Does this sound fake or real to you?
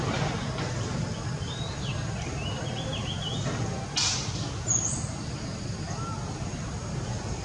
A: real